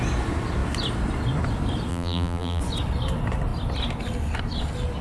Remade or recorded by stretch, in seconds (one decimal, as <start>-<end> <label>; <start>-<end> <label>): 0.0-1.9 recorded; 1.9-2.6 remade; 2.6-5.0 recorded